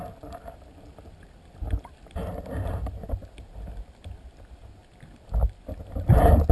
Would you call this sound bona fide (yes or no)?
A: yes